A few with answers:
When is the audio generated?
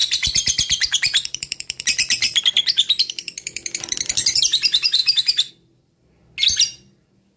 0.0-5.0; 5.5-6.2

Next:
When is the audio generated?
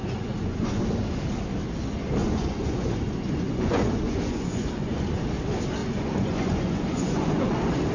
0.0-0.8; 2.2-5.2; 5.8-7.5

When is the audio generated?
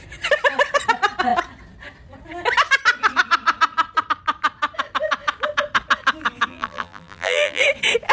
6.5-7.6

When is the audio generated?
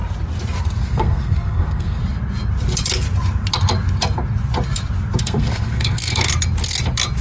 0.8-2.0; 5.2-6.3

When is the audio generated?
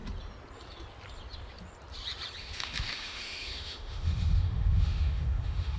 2.4-5.8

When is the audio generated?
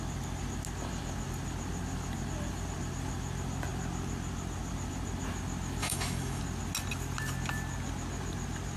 5.8-6.4